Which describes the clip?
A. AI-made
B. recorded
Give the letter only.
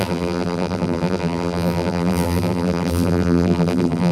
A